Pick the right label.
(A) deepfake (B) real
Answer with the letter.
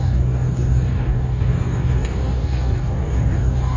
A